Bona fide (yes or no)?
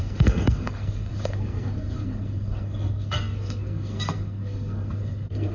no